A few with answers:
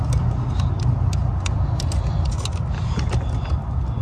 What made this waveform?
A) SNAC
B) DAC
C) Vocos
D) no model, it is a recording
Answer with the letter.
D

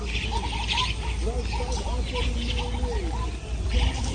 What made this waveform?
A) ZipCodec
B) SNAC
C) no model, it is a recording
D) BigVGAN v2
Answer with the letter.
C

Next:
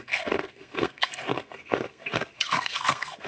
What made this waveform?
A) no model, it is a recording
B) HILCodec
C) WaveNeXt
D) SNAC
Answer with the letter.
D